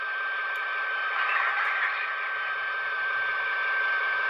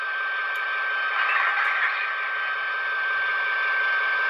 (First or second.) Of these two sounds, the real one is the second